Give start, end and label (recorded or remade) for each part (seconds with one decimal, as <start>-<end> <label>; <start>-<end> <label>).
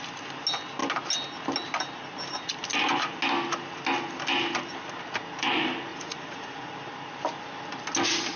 0.0-5.9 recorded; 5.9-6.7 remade; 6.7-8.4 recorded